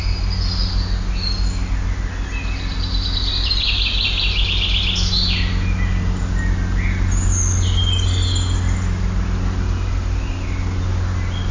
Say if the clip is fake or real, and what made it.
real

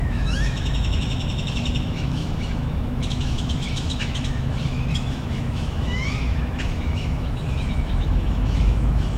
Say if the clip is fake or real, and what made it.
fake, autoencoder, DAC-VAE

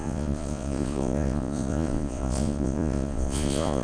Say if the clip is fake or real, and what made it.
fake, vocoder, Vocos